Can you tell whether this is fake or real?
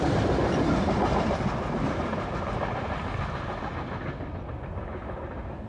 real